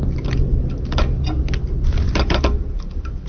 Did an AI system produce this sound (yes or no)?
no